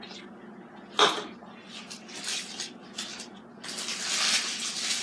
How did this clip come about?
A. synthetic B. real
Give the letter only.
B